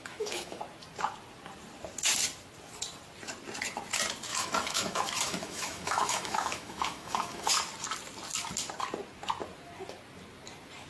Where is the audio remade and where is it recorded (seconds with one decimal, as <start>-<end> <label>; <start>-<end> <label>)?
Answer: 0.0-0.6 remade; 0.6-4.3 recorded; 4.3-7.5 remade; 7.5-10.9 recorded